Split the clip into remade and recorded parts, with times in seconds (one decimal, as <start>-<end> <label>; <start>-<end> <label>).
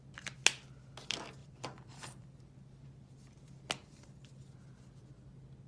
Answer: 0.0-1.4 recorded; 1.4-2.4 remade; 2.4-3.8 recorded; 3.8-4.5 remade; 4.5-5.7 recorded